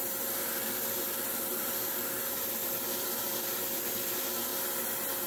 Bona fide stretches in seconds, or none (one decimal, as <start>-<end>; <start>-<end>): 0.0-5.3